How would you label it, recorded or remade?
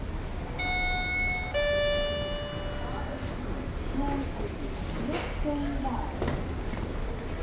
recorded